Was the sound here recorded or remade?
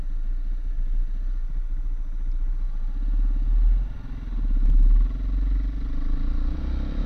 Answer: recorded